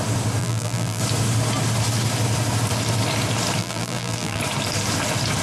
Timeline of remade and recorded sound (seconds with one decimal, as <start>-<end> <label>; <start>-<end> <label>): 0.0-0.4 recorded; 0.4-1.0 remade; 1.0-3.6 recorded; 3.6-4.4 remade; 4.4-5.4 recorded